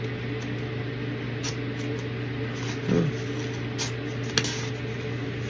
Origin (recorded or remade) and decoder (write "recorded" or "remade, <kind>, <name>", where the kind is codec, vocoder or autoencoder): recorded